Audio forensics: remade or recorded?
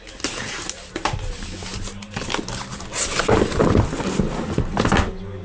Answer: recorded